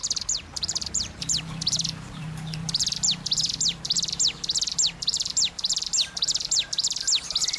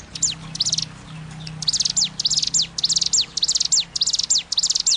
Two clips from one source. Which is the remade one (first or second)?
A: first